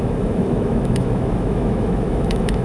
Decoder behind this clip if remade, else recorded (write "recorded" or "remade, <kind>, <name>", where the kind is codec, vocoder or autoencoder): remade, autoencoder, DAC-VAE